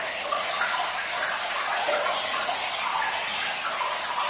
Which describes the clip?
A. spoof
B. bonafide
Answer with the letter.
B